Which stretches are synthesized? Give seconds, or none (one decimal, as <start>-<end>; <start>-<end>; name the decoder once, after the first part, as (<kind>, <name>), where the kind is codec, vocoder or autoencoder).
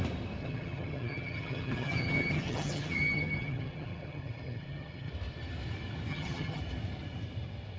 0.4-5.1 (vocoder, HiFi-GAN); 6.1-6.6